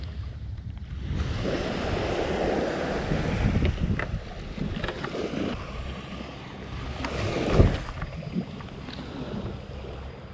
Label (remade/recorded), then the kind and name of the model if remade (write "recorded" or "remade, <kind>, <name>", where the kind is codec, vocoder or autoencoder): recorded